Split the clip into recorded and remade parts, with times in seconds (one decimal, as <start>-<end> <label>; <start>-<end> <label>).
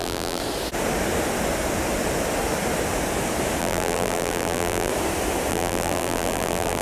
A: 0.0-0.4 remade; 0.4-3.6 recorded; 3.6-4.9 remade; 4.9-5.5 recorded; 5.5-6.8 remade